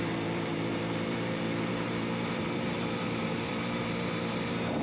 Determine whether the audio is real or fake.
fake